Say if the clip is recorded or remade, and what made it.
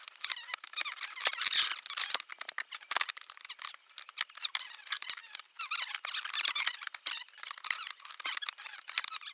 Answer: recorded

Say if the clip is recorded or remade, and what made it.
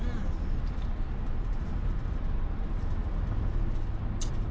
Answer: recorded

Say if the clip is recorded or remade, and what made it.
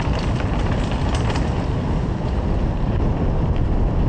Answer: recorded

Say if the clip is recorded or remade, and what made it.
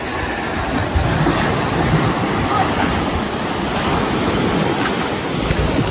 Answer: recorded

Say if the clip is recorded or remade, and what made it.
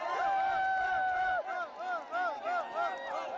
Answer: recorded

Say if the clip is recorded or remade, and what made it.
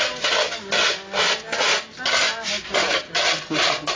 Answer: recorded